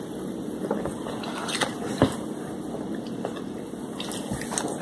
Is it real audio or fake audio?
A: real